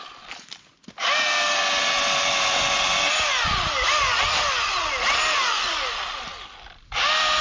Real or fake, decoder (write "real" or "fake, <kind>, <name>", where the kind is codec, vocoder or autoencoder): real